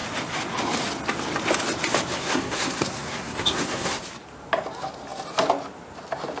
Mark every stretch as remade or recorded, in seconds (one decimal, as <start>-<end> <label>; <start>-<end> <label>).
0.0-2.2 recorded; 2.2-4.0 remade; 4.0-6.4 recorded